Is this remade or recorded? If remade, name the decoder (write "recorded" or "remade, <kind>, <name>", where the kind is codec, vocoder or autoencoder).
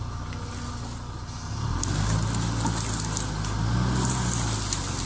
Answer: recorded